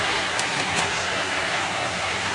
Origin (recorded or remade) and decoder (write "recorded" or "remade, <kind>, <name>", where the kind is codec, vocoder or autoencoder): remade, codec, SNAC